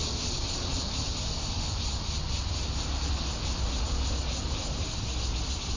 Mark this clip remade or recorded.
recorded